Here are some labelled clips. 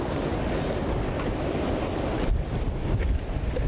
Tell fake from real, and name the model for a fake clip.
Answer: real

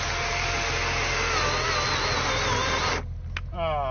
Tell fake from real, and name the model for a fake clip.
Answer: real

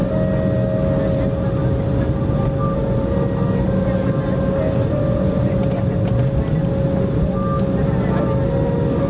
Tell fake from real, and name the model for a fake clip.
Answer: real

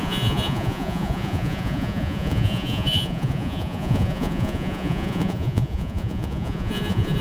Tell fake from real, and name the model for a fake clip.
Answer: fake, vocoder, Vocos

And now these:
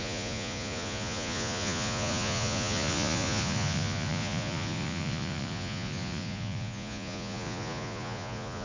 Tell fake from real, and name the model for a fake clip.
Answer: fake, vocoder, Vocos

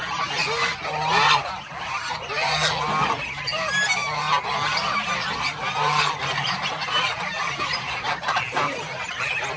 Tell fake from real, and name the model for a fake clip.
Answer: real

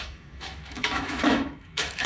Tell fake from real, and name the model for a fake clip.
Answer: fake, autoencoder, DAC-VAE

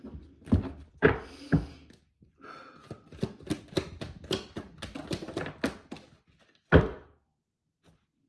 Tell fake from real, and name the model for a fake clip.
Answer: real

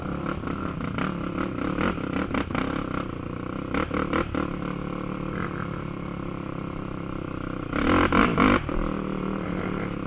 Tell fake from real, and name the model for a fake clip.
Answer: real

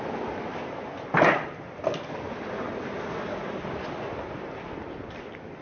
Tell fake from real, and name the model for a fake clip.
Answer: real